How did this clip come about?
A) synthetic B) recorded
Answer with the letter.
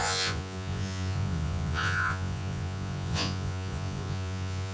A